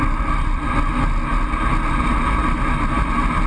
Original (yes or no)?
yes